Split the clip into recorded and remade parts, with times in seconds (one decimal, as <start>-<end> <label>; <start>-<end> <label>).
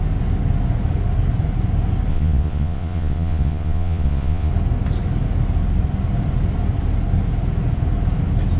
0.0-2.1 recorded; 2.1-4.5 remade; 4.5-8.6 recorded